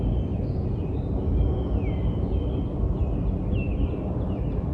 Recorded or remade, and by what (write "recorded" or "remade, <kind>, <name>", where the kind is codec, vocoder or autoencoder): recorded